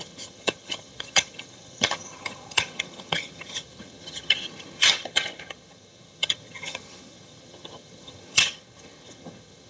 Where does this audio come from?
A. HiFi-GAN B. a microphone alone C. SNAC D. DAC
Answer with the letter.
A